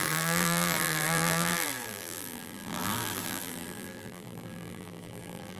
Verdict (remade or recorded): remade